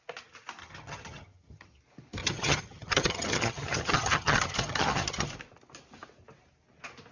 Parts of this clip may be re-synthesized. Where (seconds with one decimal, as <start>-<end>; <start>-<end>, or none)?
0.6-1.8; 2.2-5.3